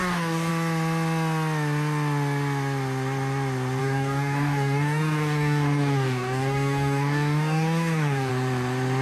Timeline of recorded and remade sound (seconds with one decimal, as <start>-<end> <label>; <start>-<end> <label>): 0.0-0.5 remade; 0.5-3.8 recorded; 3.8-8.3 remade; 8.3-9.0 recorded